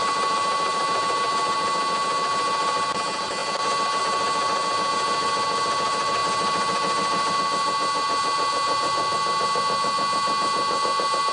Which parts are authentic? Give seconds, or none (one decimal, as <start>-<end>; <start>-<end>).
0.0-11.3